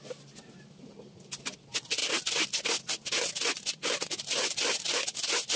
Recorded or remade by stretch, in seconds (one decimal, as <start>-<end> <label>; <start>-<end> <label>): 0.0-5.6 recorded